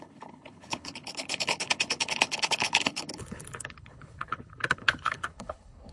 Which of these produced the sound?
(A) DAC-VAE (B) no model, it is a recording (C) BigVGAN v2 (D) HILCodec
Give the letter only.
D